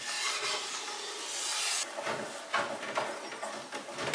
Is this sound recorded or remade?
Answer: recorded